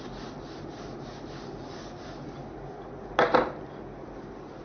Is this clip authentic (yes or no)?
yes